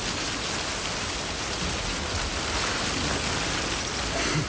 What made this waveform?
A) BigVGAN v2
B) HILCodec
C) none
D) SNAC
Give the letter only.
C